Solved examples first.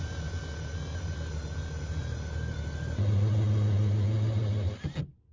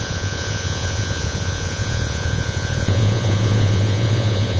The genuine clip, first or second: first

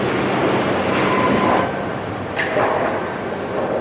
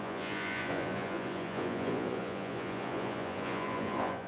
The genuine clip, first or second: first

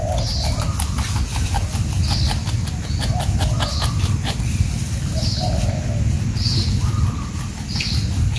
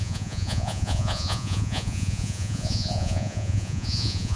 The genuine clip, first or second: first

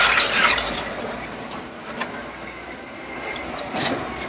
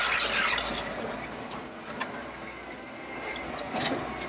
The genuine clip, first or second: second